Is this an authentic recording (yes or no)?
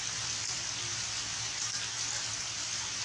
yes